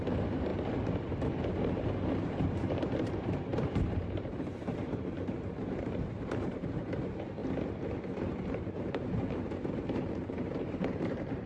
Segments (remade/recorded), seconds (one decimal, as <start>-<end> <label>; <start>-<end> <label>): 0.0-0.5 remade; 0.5-1.7 recorded; 1.7-7.4 remade; 7.4-8.5 recorded; 8.5-11.5 remade